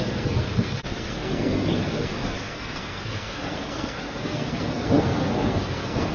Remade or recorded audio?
remade